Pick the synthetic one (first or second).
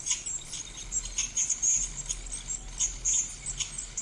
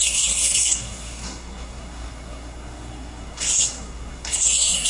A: second